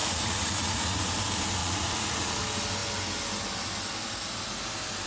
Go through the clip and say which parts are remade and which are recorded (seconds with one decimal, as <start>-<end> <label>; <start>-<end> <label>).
0.0-1.0 remade; 1.0-1.6 recorded; 1.6-2.4 remade; 2.4-5.1 recorded